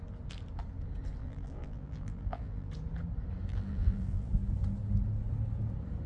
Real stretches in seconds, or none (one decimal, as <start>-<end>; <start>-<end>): 0.0-1.2; 2.7-3.5; 4.3-6.1